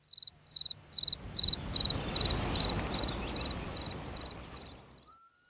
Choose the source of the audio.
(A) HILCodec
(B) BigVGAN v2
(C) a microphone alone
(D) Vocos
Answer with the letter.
C